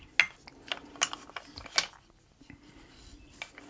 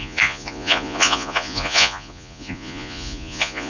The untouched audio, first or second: first